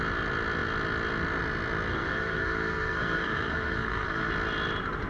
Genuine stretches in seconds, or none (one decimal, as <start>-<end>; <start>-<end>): 0.0-1.9; 4.3-5.1